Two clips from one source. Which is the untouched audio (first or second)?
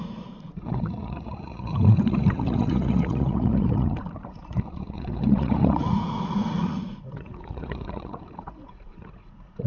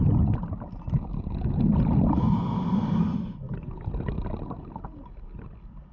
second